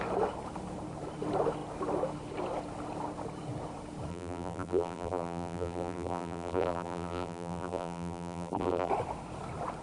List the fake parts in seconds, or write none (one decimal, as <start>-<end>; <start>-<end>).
4.1-8.9